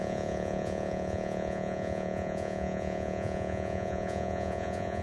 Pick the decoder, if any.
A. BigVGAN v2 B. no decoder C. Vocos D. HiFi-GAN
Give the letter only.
C